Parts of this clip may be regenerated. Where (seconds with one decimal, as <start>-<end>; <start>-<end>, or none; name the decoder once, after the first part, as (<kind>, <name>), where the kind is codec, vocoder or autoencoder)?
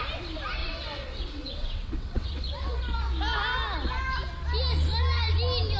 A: 0.6-2.8 (vocoder, WaveNeXt)